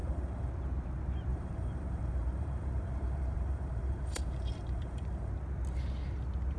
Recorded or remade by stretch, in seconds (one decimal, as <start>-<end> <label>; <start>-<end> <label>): 0.0-0.5 remade; 0.5-1.3 recorded; 1.3-5.3 remade; 5.3-6.6 recorded

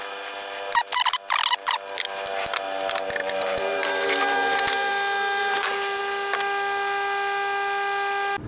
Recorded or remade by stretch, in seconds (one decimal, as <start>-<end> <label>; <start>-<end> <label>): 0.0-3.2 recorded; 3.2-4.9 remade; 4.9-5.4 recorded; 5.4-6.0 remade; 6.0-8.5 recorded

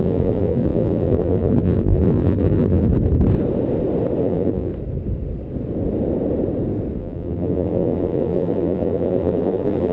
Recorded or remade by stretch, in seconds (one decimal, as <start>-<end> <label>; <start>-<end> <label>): 0.0-2.9 remade; 2.9-4.2 recorded; 4.2-4.7 remade; 4.7-7.0 recorded; 7.0-9.9 remade

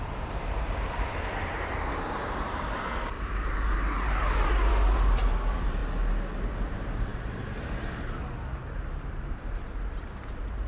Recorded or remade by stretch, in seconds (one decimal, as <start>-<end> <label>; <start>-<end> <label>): 0.0-5.8 remade; 5.8-6.6 recorded; 6.6-10.7 remade

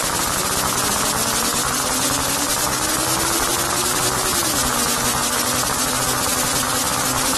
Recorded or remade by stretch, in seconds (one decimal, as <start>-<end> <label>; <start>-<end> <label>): 0.0-7.4 recorded

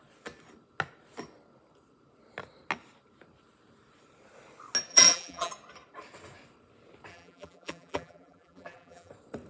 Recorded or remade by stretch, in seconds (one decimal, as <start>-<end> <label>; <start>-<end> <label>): 0.0-4.9 recorded; 4.9-5.5 remade; 5.5-7.1 recorded; 7.1-9.1 remade; 9.1-9.5 recorded